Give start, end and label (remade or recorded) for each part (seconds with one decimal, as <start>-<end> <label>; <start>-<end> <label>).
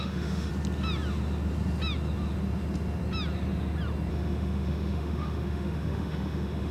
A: 0.0-0.5 remade; 0.5-4.1 recorded; 4.1-6.7 remade